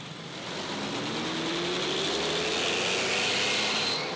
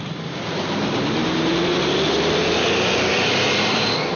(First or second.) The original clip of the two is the first